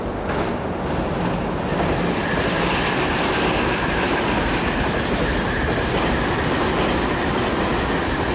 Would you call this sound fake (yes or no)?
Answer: no